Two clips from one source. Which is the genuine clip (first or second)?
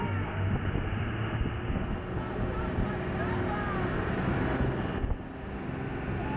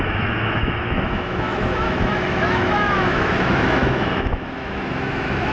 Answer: first